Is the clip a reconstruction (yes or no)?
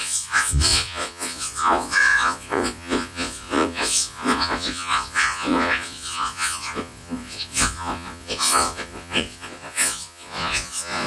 yes